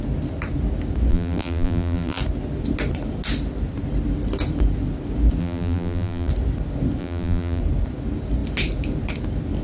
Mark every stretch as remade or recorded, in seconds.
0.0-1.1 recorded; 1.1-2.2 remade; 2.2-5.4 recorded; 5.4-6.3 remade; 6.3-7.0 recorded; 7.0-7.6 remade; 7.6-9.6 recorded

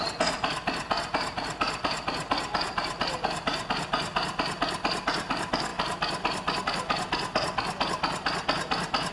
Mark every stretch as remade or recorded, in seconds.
0.0-9.1 recorded

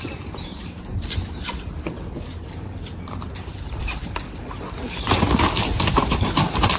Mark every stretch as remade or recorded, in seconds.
0.0-3.8 remade; 3.8-5.5 recorded; 5.5-6.8 remade

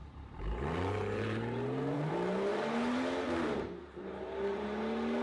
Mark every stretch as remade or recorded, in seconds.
0.0-2.1 remade; 2.1-2.5 recorded; 2.5-4.8 remade; 4.8-5.2 recorded

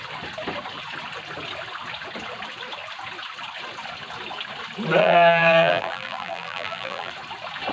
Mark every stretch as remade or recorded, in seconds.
0.0-5.0 recorded; 5.0-7.1 remade; 7.1-7.7 recorded

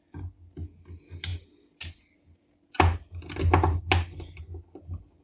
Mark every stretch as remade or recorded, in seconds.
0.0-5.2 recorded

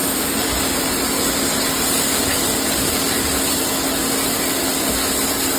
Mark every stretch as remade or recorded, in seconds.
0.0-0.9 remade; 0.9-5.6 recorded

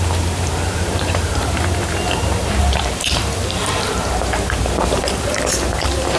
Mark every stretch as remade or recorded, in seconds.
0.0-6.2 remade